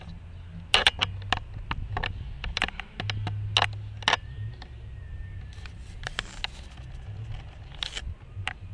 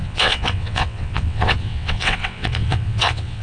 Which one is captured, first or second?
first